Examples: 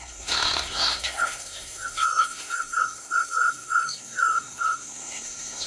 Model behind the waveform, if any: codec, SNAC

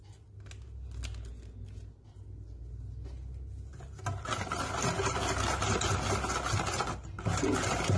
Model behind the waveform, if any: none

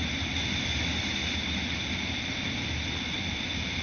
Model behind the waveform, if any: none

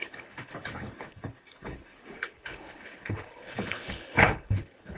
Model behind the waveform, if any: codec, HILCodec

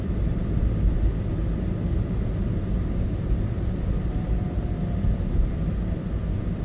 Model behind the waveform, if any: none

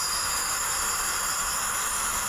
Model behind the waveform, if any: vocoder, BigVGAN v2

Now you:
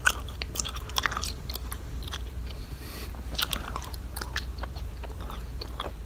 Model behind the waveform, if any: vocoder, BigVGAN v2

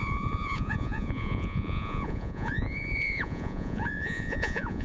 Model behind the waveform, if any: vocoder, Vocos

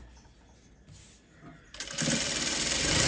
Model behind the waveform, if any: none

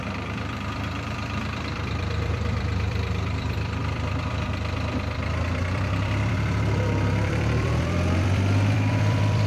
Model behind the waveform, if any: vocoder, BigVGAN v2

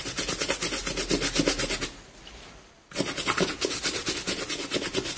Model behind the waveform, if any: none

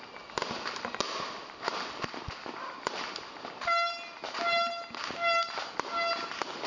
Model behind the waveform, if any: none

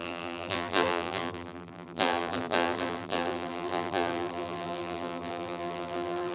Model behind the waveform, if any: vocoder, BigVGAN v2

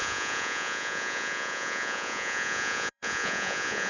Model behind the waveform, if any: vocoder, Vocos